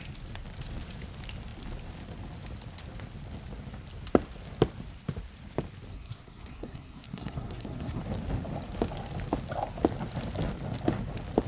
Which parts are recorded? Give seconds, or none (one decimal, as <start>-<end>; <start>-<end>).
0.0-5.9; 8.0-11.5